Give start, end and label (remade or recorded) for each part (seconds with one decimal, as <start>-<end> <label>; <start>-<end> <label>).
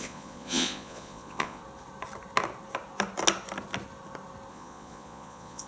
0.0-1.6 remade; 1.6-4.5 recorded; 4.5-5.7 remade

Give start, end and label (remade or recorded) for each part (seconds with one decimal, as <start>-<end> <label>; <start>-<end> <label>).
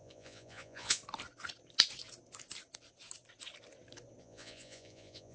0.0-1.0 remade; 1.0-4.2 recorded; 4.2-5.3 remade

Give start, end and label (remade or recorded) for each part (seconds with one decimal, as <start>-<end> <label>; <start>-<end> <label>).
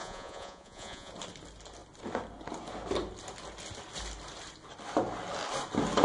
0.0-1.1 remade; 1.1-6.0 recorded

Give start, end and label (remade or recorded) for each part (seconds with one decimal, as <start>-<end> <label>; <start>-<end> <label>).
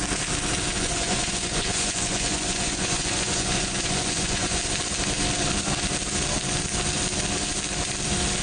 0.0-0.7 recorded; 0.7-4.6 remade; 4.6-8.4 recorded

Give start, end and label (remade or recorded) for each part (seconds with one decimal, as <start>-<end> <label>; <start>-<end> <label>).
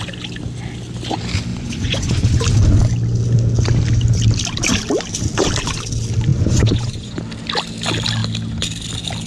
0.0-1.5 recorded; 1.5-2.4 remade; 2.4-6.3 recorded; 6.3-7.2 remade; 7.2-9.3 recorded